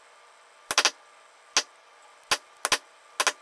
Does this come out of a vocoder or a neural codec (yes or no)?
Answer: no